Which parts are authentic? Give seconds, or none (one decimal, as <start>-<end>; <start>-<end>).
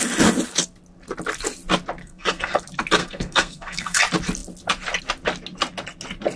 0.0-2.0; 2.6-3.0; 4.0-6.4